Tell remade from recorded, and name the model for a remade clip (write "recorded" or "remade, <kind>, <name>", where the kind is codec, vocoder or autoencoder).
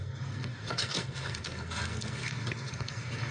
remade, codec, SNAC